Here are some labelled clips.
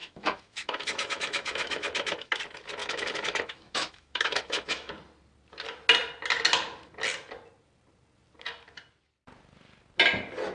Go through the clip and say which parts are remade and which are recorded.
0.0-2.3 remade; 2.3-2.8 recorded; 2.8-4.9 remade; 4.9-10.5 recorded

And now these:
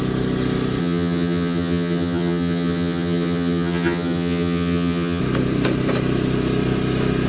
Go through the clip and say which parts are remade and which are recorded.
0.0-0.8 recorded; 0.8-5.2 remade; 5.2-7.3 recorded